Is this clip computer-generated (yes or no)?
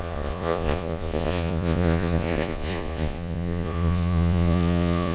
yes